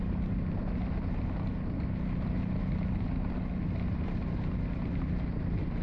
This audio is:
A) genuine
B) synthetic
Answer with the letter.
A